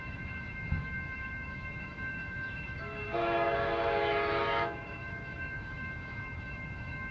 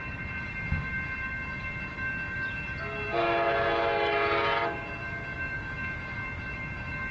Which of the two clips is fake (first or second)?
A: first